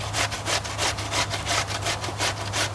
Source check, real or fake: fake